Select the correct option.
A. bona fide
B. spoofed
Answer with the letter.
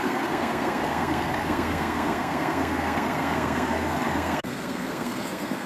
B